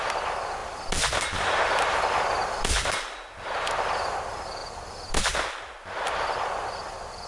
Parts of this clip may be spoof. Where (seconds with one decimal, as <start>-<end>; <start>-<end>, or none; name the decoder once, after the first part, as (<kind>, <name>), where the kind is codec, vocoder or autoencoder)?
none